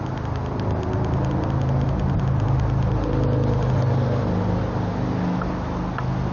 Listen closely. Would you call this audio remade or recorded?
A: recorded